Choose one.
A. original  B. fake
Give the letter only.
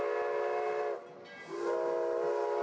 A